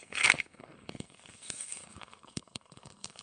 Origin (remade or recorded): remade